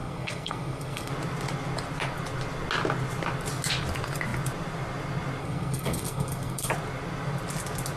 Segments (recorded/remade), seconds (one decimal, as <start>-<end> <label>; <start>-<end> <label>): 0.0-1.1 remade; 1.1-5.4 recorded; 5.4-6.7 remade; 6.7-8.0 recorded